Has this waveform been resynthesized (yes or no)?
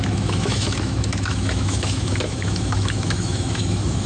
yes